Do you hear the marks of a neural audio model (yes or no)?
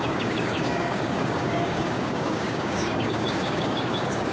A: yes